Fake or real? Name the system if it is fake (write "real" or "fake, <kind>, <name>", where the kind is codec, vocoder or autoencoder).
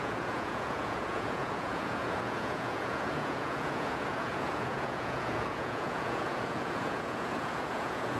fake, vocoder, Vocos